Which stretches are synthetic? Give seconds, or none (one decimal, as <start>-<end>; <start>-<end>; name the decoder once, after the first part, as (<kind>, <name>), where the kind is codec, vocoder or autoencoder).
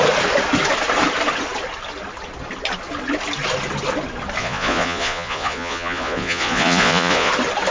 4.4-7.3 (vocoder, Vocos)